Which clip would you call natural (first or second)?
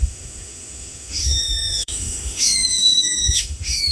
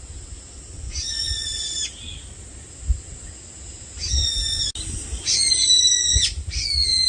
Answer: second